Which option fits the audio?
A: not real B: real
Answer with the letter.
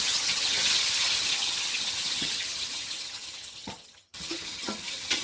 A